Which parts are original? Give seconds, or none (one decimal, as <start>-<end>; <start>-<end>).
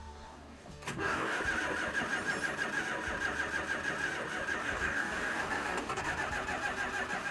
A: 1.4-4.6; 6.0-7.3